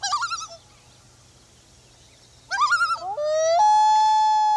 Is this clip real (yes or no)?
yes